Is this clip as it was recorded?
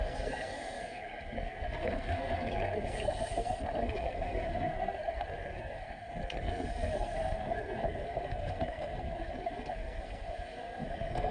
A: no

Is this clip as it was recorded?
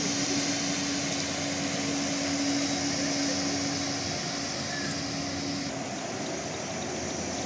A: yes